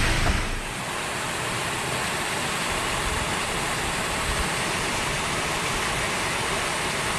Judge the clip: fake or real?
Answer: real